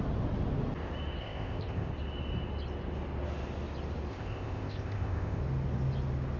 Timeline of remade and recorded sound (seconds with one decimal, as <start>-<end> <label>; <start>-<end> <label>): 0.0-1.2 recorded; 1.2-1.9 remade; 1.9-4.1 recorded; 4.1-5.4 remade; 5.4-6.4 recorded